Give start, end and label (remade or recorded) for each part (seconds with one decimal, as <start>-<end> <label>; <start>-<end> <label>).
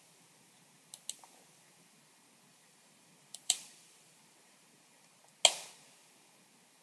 0.0-2.5 recorded; 2.5-5.2 remade; 5.2-6.8 recorded